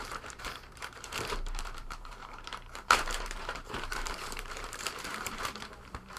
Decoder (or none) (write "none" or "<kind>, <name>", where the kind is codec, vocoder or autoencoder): vocoder, BigVGAN v2